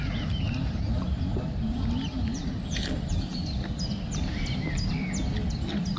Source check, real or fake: real